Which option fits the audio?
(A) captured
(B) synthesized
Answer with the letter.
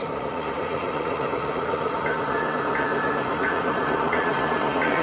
B